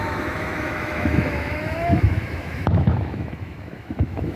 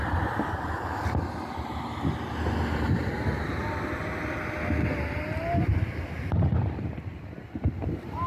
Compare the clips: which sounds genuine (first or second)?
second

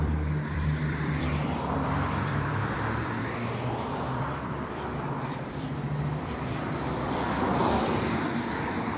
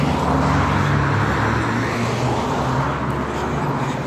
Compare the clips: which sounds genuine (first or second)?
second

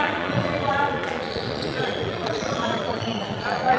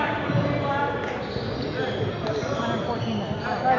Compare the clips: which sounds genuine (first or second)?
second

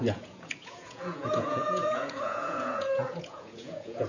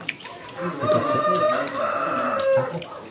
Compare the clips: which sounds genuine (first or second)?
second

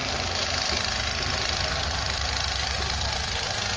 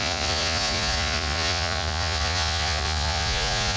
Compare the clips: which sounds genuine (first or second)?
first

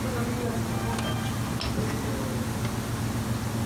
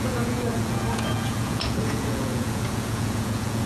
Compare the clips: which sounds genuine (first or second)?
first